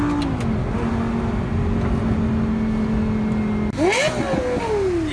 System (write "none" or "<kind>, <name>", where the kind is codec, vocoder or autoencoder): none